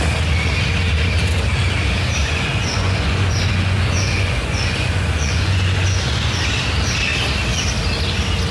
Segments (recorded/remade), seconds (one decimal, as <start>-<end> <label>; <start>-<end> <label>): 0.0-2.2 recorded; 2.2-6.4 remade; 6.4-8.5 recorded